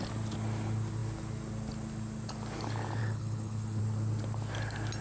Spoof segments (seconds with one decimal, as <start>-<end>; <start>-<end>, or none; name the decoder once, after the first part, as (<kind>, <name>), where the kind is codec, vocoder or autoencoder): 3.0-3.8 (codec, HILCodec)